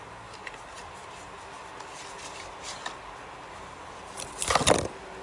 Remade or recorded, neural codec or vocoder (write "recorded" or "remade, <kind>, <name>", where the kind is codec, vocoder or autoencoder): recorded